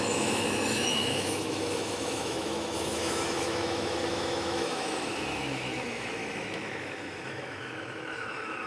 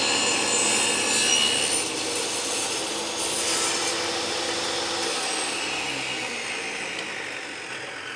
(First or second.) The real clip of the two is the second